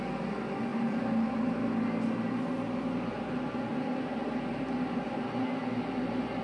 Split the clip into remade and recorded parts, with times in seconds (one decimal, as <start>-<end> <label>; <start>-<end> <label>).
0.0-6.4 recorded